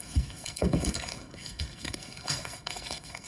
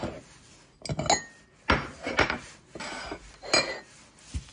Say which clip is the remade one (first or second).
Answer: first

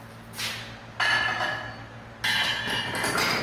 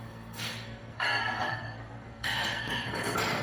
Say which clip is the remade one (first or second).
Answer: second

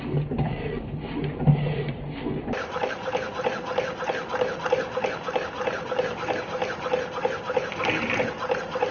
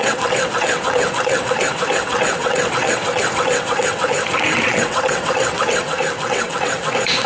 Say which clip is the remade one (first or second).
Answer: second